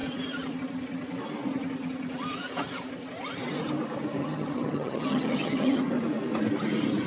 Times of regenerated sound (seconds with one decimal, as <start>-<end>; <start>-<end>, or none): 4.2-5.9

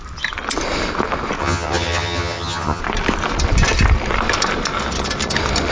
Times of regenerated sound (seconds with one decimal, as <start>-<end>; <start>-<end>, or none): 1.4-2.8

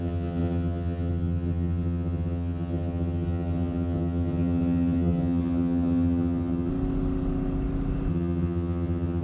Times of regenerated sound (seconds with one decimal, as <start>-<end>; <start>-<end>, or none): 0.0-6.7; 8.1-9.2

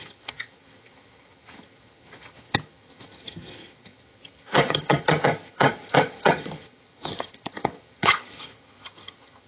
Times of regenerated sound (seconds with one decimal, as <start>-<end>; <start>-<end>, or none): 0.0-9.5